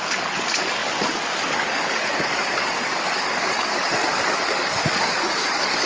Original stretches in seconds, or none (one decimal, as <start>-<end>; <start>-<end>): none